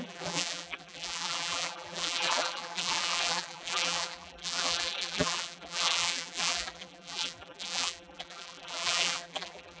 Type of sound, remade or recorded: remade